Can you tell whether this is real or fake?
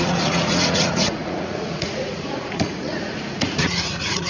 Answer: fake